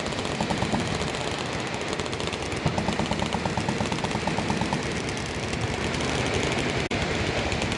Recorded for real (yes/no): yes